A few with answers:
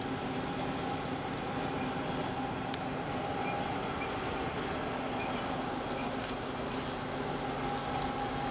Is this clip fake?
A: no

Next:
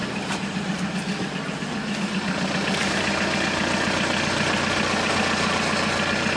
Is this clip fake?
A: no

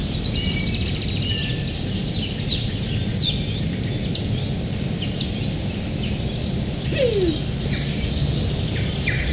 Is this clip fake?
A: no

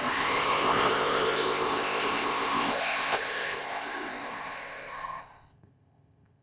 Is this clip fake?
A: yes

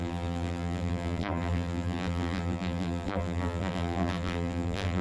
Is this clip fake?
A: yes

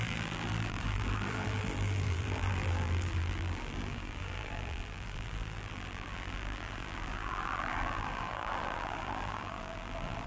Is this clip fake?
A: yes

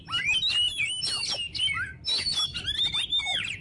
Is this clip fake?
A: no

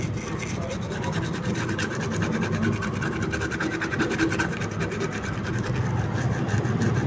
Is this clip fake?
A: no